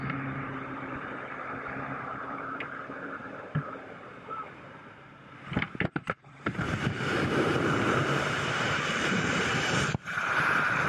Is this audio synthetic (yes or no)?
yes